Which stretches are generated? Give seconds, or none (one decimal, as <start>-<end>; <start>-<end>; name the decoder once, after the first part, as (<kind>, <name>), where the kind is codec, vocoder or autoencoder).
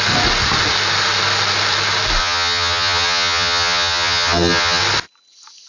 2.2-4.8 (vocoder, HiFi-GAN)